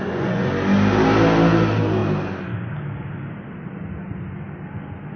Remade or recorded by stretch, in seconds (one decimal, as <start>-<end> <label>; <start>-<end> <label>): 0.0-0.5 remade; 0.5-5.2 recorded